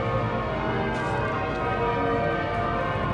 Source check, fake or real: real